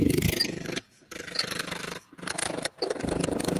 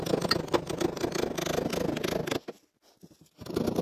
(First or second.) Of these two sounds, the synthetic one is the first